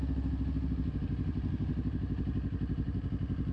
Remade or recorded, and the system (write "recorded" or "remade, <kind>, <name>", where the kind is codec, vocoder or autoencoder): recorded